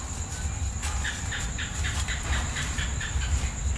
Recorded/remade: recorded